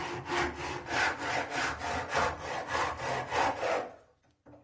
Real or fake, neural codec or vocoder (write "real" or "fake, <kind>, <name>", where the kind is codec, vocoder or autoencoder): real